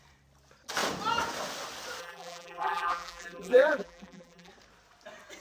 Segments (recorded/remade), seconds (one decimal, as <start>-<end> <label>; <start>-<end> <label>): 0.0-2.0 recorded; 2.0-4.5 remade; 4.5-5.4 recorded